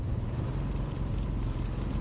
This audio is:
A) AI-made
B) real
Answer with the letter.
A